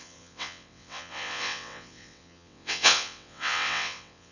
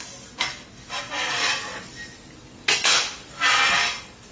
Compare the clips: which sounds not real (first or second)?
first